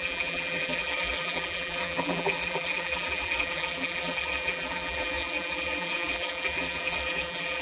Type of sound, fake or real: fake